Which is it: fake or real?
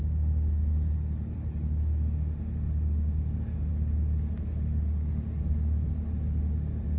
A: real